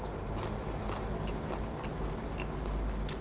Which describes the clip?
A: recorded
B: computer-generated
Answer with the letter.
A